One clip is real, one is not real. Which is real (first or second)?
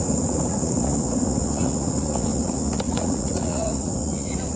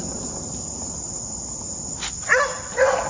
second